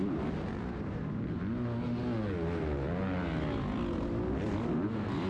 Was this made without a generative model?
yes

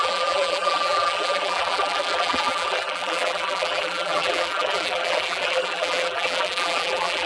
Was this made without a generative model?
no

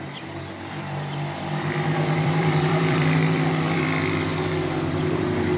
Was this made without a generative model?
no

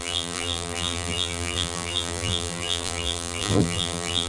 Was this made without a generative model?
no